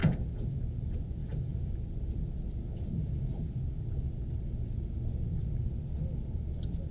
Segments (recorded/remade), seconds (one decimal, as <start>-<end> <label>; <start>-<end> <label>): 0.0-0.5 remade; 0.5-1.2 recorded; 1.2-1.7 remade; 1.7-3.0 recorded; 3.0-3.6 remade; 3.6-6.9 recorded